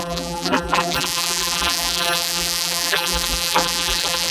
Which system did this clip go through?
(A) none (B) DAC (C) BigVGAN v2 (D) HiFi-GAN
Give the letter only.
C